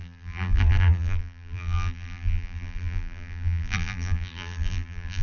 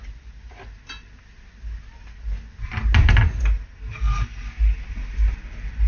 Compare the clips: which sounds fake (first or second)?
first